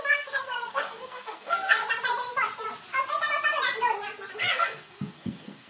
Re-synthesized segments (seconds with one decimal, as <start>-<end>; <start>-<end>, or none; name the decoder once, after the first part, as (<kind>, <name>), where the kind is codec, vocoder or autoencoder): 0.0-1.8 (codec, SNAC); 4.3-5.7